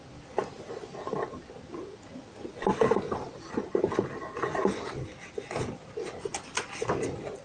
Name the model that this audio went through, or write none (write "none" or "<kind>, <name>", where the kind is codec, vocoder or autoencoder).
none